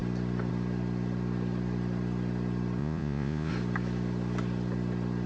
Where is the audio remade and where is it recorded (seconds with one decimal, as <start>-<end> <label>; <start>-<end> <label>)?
0.0-2.8 recorded; 2.8-3.5 remade; 3.5-5.3 recorded

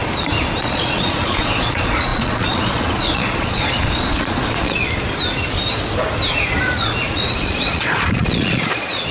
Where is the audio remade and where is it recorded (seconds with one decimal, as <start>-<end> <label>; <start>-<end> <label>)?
0.0-0.6 recorded; 0.6-4.8 remade; 4.8-6.6 recorded; 6.6-9.1 remade

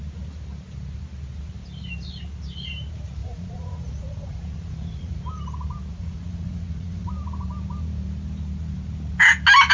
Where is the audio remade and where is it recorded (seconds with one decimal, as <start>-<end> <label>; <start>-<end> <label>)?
0.0-3.2 recorded; 3.2-5.2 remade; 5.2-5.9 recorded; 5.9-7.1 remade; 7.1-9.7 recorded

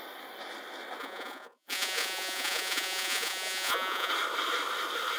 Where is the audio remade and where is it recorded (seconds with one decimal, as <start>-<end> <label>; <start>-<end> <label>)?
0.0-1.0 recorded; 1.0-4.1 remade; 4.1-5.2 recorded

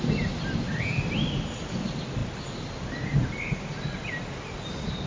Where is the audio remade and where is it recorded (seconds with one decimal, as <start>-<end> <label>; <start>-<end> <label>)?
0.0-5.1 recorded